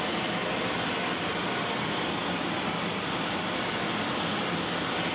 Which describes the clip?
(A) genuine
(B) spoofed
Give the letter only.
A